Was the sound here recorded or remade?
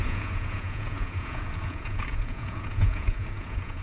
remade